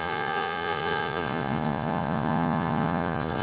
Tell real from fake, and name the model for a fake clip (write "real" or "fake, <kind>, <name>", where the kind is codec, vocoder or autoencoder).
fake, vocoder, Vocos